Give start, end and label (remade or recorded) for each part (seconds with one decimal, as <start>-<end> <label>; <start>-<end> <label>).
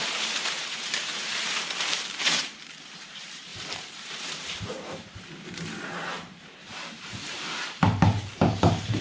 0.0-9.0 remade